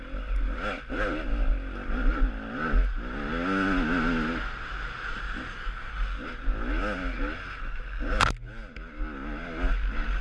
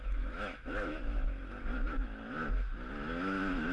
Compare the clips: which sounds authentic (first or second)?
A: first